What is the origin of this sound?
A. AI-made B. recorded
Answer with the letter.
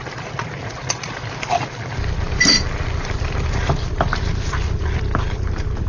A